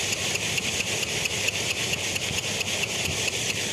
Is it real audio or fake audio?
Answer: real